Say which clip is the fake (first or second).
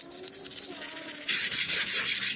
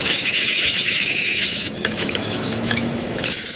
second